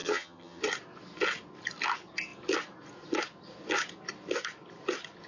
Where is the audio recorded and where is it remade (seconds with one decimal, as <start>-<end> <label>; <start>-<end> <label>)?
0.0-0.6 remade; 0.6-5.3 recorded